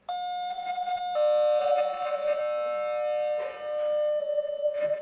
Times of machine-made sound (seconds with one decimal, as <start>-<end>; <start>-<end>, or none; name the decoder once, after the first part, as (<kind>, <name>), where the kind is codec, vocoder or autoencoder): 0.5-1.0 (vocoder, Vocos); 1.6-2.4; 4.2-5.0